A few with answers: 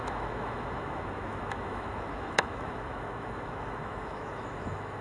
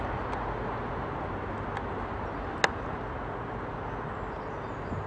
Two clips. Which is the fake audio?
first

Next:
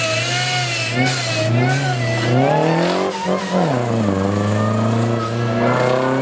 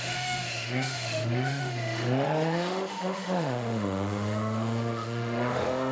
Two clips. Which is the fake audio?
second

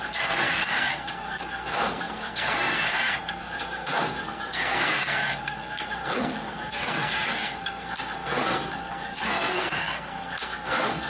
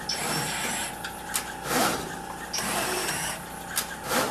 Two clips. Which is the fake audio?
first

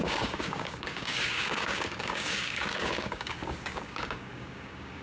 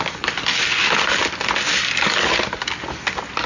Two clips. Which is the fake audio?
first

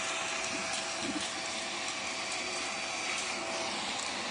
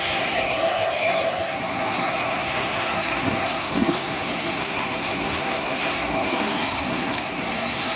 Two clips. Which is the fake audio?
second